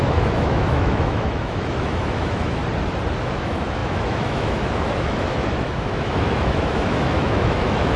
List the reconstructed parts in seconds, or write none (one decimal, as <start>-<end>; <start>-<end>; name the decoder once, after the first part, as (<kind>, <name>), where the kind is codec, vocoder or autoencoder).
0.0-2.6 (autoencoder, DAC-VAE); 3.2-8.0